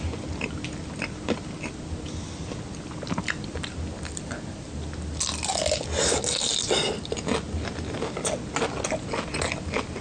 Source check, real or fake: real